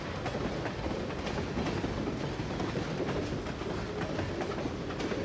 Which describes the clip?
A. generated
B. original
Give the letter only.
B